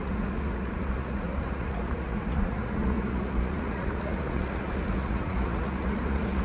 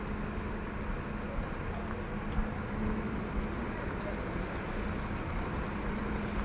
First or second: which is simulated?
first